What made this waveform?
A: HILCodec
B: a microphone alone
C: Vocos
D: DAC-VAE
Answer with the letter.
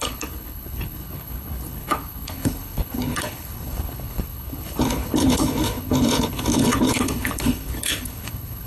A